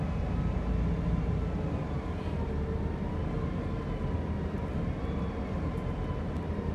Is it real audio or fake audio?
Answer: real